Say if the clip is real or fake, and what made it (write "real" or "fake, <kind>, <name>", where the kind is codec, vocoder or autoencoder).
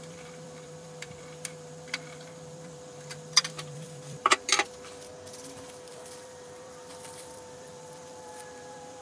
fake, vocoder, BigVGAN v2